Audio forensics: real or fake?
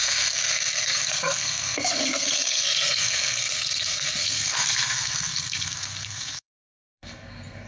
fake